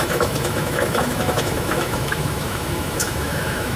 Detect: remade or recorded remade